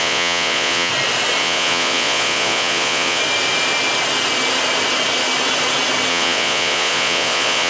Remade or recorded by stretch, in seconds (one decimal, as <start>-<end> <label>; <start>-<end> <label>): 0.0-0.9 remade; 0.9-1.4 recorded; 1.4-3.2 remade; 3.2-6.1 recorded; 6.1-7.7 remade